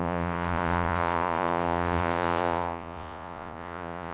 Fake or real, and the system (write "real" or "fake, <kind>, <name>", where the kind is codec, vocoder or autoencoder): fake, vocoder, Vocos